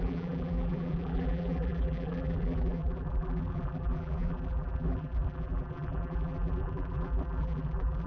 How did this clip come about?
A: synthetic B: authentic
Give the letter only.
A